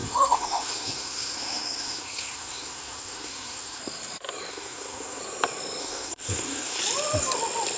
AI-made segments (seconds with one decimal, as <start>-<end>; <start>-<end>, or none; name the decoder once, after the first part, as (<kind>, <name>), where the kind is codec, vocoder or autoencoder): 0.0-3.8 (codec, SNAC); 4.5-5.2; 5.8-6.8